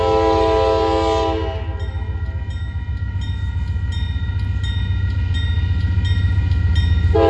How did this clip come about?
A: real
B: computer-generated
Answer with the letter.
A